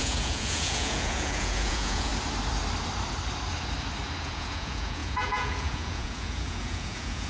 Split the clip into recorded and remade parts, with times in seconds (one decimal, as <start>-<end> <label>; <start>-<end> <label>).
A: 0.0-2.1 remade; 2.1-4.2 recorded; 4.2-7.3 remade